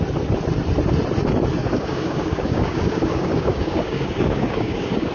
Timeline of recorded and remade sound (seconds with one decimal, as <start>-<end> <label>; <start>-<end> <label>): 0.0-1.6 recorded; 1.6-5.1 remade